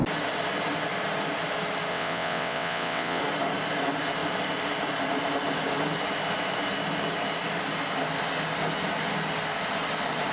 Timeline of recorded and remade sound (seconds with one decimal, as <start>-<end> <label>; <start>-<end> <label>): 0.0-1.9 recorded; 1.9-3.2 remade; 3.2-10.3 recorded